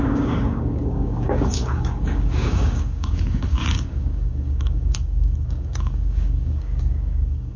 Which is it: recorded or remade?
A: remade